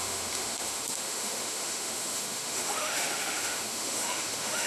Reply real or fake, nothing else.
fake